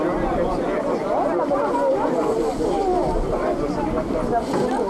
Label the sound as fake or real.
real